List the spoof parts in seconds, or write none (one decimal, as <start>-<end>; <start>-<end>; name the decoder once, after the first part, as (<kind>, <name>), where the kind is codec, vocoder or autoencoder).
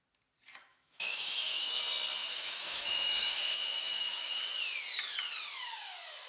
0.7-1.8 (autoencoder, DAC-VAE); 2.2-4.4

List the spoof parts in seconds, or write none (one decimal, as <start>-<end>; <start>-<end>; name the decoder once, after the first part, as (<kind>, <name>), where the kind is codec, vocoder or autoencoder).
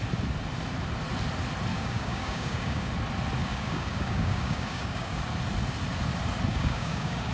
1.7-2.9 (codec, DAC); 3.4-5.2; 6.5-7.3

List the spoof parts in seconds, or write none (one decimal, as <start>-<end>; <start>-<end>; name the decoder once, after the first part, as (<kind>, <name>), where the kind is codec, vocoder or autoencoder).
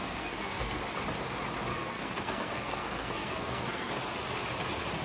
0.0-0.8 (codec, SNAC); 1.7-3.9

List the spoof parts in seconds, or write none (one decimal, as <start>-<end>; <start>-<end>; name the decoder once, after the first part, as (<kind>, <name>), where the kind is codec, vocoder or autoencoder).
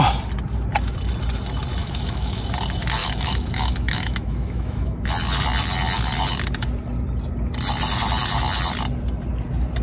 1.8-2.4 (autoencoder, DAC-VAE); 3.0-5.0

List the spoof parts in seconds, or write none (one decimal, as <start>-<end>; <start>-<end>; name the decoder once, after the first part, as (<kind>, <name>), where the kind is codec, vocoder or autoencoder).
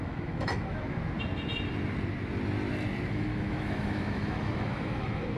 0.0-1.0 (autoencoder, DAC-VAE); 3.1-5.4